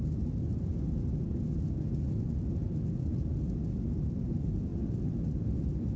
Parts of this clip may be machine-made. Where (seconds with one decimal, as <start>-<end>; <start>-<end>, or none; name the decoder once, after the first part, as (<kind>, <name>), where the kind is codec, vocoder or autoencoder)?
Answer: 4.7-6.0 (vocoder, BigVGAN v2)